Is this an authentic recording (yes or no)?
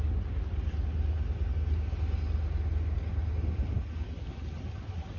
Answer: yes